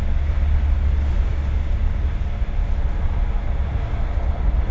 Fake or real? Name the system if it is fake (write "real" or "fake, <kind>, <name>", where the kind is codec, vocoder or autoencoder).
real